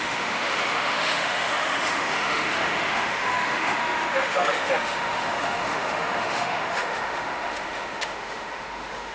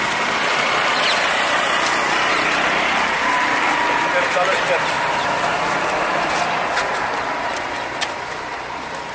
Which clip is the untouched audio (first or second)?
second